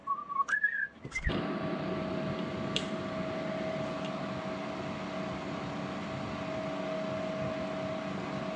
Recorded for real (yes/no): yes